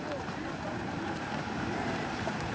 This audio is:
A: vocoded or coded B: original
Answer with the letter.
A